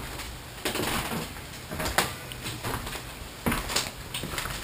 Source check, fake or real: real